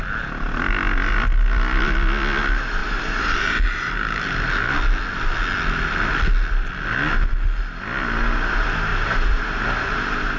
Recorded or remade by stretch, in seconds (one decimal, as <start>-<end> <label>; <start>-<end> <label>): 0.0-2.8 recorded; 2.8-3.9 remade; 3.9-8.9 recorded; 8.9-9.6 remade; 9.6-10.4 recorded